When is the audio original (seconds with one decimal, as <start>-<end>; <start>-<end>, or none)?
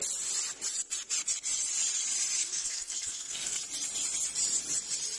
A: 0.0-2.4; 3.6-5.2